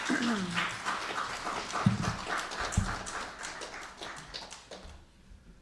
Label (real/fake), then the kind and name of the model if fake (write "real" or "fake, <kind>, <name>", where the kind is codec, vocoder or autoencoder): real